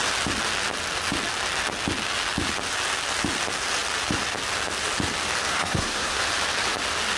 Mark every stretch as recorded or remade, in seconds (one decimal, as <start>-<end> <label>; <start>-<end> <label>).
0.0-5.5 recorded; 5.5-6.2 remade; 6.2-7.2 recorded

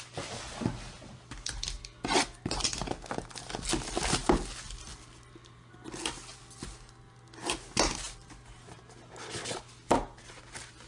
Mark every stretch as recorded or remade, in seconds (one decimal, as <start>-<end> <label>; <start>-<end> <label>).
0.0-10.9 recorded